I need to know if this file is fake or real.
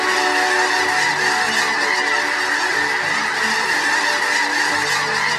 real